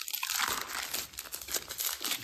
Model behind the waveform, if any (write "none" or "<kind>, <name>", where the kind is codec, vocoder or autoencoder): none